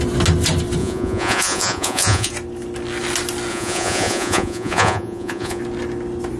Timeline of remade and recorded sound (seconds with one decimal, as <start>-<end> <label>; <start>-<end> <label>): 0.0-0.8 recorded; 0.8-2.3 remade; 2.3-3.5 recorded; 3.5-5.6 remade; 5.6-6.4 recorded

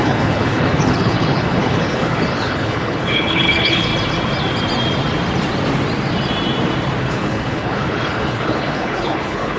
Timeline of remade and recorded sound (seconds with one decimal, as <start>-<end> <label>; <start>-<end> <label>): 0.0-3.9 remade; 3.9-7.0 recorded; 7.0-9.6 remade

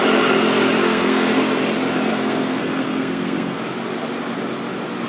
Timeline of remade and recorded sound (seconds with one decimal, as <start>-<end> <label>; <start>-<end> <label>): 0.0-0.8 recorded; 0.8-1.3 remade; 1.3-2.1 recorded; 2.1-3.6 remade; 3.6-5.1 recorded